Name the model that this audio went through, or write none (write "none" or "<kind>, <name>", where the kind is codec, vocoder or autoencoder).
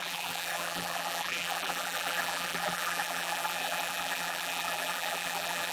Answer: vocoder, BigVGAN v2